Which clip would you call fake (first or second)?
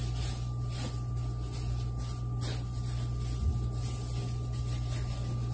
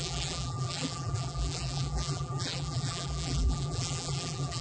second